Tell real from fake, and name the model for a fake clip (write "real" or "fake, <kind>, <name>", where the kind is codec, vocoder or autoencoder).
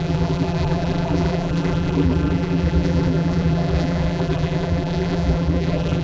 fake, vocoder, BigVGAN v2